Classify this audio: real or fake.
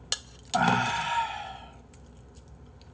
real